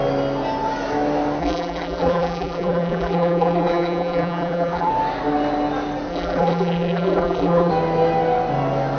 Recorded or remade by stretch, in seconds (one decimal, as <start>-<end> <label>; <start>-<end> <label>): 0.0-1.4 recorded; 1.4-4.9 remade; 4.9-6.1 recorded; 6.1-7.7 remade; 7.7-9.0 recorded